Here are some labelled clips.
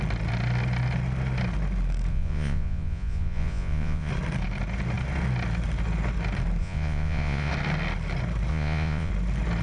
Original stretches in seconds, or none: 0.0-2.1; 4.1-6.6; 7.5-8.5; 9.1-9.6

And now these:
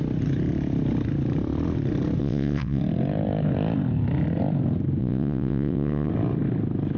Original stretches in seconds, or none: 0.0-2.2; 2.8-5.0; 6.1-7.0

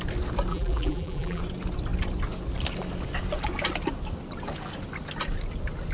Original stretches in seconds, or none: 0.0-0.5; 1.4-5.9

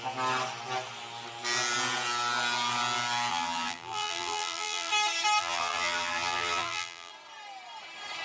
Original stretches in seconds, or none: 0.0-3.3; 4.9-5.4; 7.1-8.2

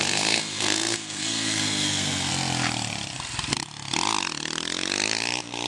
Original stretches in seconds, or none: 2.3-5.7